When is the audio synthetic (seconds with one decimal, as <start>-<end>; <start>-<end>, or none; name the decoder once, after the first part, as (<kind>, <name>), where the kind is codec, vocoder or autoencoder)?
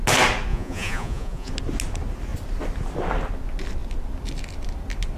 0.5-1.5 (vocoder, Vocos)